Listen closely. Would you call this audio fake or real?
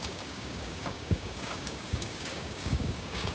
fake